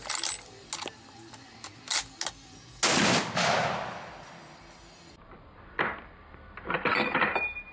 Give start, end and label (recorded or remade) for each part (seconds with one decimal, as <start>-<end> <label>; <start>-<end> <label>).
0.0-7.7 recorded